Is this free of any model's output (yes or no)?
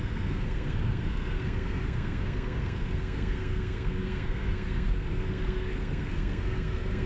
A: no